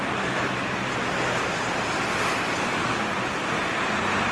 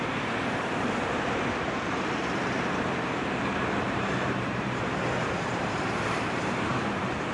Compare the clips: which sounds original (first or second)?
first